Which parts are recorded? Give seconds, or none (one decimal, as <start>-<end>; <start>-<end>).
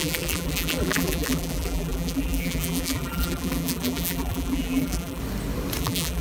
5.2-5.8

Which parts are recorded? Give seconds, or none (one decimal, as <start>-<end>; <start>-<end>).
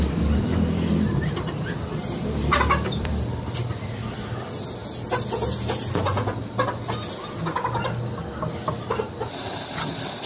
4.8-8.4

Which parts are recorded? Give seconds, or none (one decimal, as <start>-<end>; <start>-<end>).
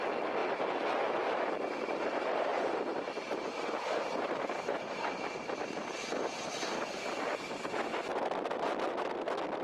0.0-9.6